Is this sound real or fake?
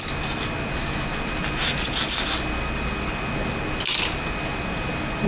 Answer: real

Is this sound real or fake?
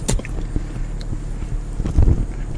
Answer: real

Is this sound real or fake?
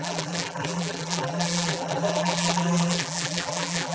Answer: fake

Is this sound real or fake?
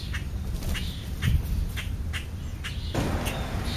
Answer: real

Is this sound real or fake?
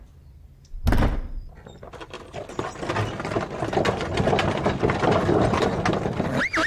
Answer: real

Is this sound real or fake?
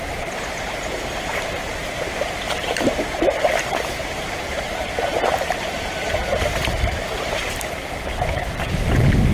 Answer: fake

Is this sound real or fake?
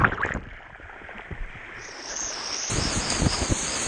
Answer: real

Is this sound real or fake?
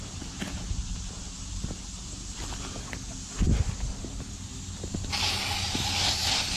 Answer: real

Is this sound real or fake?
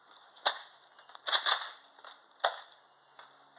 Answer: real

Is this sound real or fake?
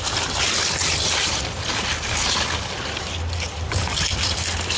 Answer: fake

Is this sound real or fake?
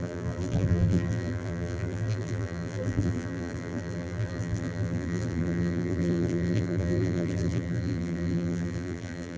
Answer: fake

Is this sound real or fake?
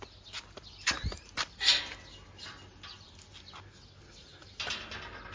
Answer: real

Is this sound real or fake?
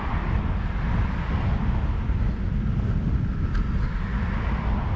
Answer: real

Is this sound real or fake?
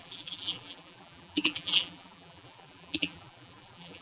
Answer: fake